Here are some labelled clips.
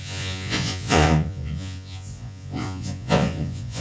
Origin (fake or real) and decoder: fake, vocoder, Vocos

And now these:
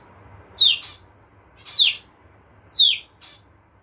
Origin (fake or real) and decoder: real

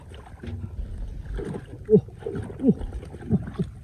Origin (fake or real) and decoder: real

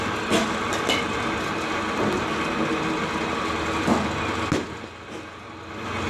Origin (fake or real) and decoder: real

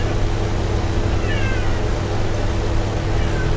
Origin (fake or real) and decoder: real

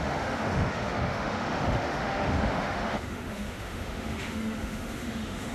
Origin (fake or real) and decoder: fake, autoencoder, DAC-VAE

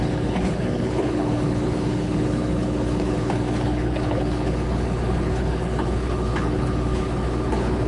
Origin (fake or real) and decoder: fake, codec, HILCodec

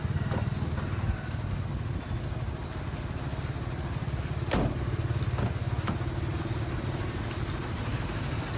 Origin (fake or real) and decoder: real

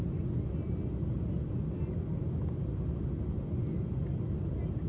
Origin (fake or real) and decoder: real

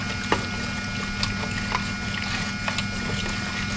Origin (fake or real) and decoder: real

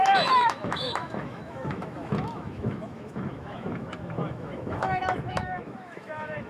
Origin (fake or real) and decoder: fake, autoencoder, DAC-VAE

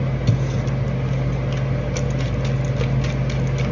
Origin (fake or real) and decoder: real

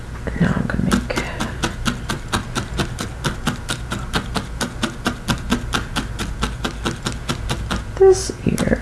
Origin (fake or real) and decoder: real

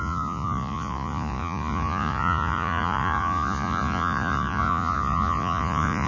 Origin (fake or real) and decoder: fake, vocoder, Vocos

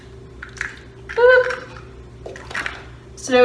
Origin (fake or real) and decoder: real